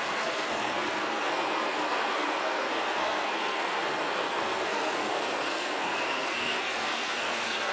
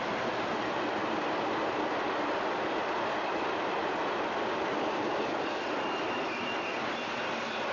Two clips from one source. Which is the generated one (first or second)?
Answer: first